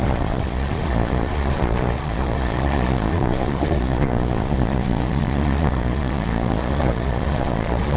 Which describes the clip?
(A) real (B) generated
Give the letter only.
B